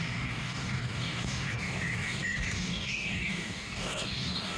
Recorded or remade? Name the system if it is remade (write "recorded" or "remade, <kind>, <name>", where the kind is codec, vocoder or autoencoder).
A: remade, codec, DAC